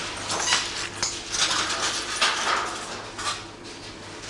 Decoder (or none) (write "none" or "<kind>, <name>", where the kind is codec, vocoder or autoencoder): none